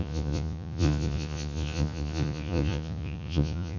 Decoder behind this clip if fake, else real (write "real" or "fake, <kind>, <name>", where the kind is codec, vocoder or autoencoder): fake, vocoder, Vocos